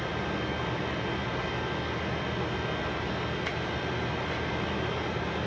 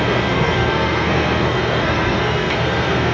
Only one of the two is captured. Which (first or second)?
first